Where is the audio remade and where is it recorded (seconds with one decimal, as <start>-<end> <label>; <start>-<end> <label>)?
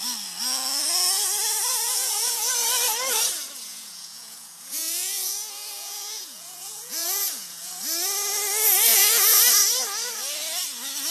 0.0-1.7 recorded; 1.7-2.5 remade; 2.5-3.7 recorded; 3.7-7.7 remade; 7.7-8.9 recorded; 8.9-9.4 remade; 9.4-11.1 recorded